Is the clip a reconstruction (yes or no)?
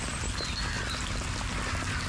no